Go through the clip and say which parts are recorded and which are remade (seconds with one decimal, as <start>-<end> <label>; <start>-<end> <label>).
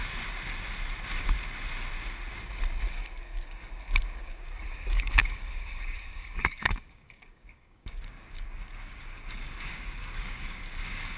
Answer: 0.0-2.9 recorded; 2.9-11.2 remade